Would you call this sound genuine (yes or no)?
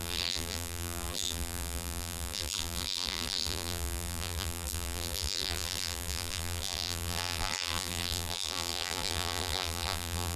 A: no